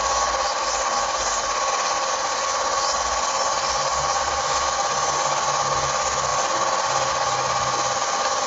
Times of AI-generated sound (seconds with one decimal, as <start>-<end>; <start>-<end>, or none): none